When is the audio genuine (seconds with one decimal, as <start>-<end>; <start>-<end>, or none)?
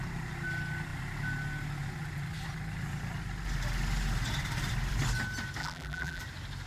0.0-5.6; 6.2-6.7